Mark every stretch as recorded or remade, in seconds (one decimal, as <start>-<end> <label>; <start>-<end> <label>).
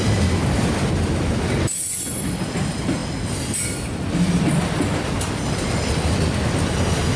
0.0-7.2 recorded